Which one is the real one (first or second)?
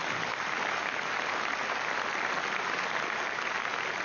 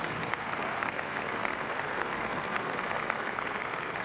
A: first